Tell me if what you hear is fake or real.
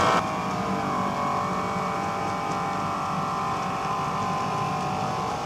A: real